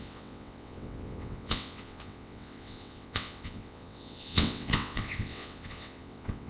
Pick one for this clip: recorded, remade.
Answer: remade